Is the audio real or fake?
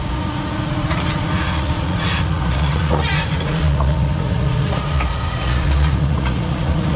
fake